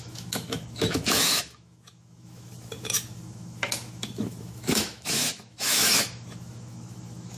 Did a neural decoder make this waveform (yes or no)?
yes